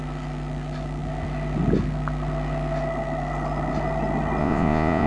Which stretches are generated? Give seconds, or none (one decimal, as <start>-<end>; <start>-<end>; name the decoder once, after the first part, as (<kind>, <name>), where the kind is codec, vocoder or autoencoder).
4.4-5.1 (vocoder, Vocos)